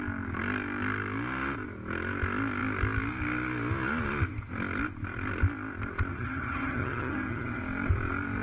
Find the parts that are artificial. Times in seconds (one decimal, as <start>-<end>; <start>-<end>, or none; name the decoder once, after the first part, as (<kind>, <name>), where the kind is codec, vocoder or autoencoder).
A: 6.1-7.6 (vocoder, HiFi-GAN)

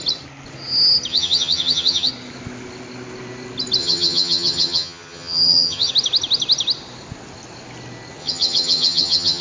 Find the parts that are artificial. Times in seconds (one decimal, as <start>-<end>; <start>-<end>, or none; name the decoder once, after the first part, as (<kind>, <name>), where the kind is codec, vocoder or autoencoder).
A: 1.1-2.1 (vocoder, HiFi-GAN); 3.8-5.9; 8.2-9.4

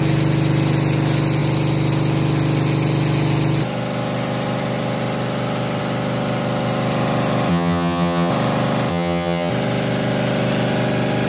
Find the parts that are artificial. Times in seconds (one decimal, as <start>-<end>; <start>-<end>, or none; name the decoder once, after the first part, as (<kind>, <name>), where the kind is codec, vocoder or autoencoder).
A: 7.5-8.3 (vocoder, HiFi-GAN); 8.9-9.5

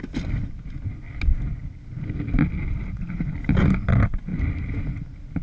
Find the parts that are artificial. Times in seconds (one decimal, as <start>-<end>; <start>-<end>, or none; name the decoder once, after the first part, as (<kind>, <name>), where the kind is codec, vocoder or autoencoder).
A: none

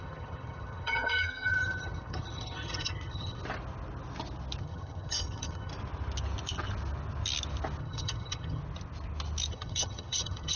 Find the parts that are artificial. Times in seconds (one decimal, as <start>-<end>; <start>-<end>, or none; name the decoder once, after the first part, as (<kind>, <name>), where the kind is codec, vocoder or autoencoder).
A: 0.0-3.4 (vocoder, HiFi-GAN); 4.6-5.7; 7.8-8.6; 9.5-10.6

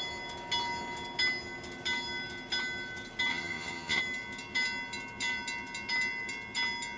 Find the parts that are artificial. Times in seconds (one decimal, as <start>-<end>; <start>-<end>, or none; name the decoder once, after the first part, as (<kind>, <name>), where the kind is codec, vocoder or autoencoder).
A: 3.3-4.0 (vocoder, HiFi-GAN)